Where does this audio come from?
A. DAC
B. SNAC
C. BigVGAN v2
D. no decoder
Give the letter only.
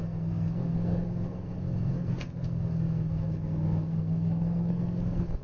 B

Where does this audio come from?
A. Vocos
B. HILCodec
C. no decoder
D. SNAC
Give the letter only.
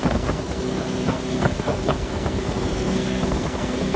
D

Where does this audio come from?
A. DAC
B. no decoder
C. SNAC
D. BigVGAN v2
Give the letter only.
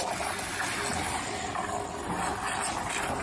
B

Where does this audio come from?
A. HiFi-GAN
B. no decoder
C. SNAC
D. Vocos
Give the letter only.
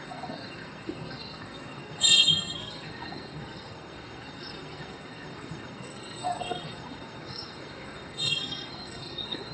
C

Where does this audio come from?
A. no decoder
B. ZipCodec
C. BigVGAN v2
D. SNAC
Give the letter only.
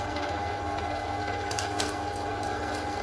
D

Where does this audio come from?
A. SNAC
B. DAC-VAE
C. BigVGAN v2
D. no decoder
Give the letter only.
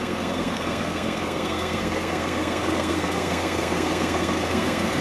A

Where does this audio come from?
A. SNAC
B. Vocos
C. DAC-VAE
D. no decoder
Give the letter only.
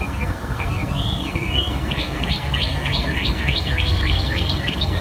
A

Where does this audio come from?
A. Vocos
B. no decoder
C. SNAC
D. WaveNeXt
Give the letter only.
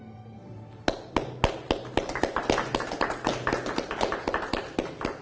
B